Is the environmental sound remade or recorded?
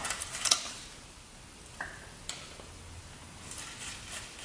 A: recorded